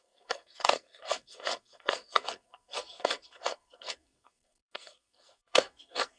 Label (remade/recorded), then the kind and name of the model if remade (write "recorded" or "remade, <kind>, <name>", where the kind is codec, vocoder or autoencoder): remade, codec, SNAC